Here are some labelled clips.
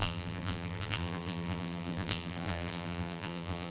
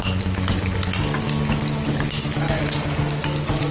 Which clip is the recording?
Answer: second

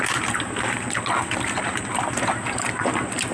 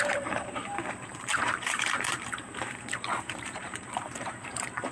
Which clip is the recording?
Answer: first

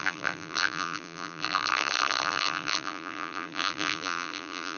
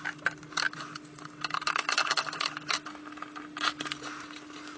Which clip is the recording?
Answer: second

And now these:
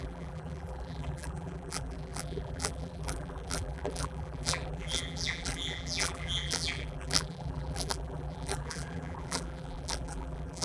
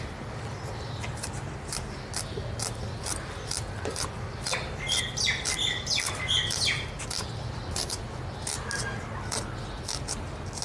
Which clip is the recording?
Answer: second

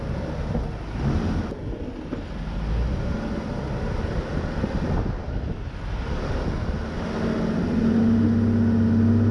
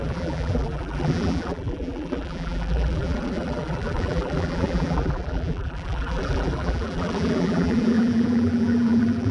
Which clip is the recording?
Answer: first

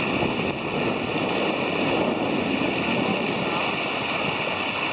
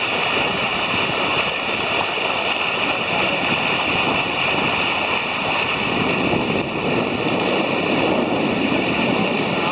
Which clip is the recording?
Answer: first